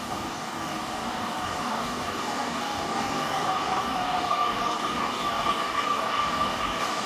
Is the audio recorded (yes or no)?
no